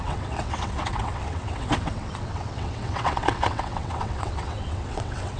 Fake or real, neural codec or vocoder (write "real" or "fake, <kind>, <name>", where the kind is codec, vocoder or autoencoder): fake, vocoder, WaveNeXt